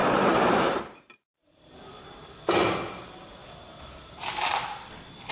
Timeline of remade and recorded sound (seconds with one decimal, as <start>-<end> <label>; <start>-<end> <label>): 0.0-3.4 remade; 3.4-5.3 recorded